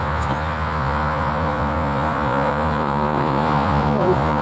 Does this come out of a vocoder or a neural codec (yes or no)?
yes